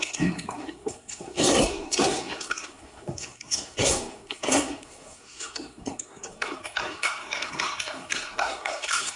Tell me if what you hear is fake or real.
fake